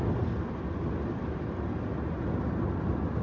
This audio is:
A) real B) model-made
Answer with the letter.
A